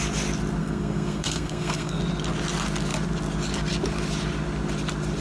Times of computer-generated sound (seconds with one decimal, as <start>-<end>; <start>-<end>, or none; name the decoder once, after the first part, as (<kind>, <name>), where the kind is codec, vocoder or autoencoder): 0.6-2.0 (codec, SNAC)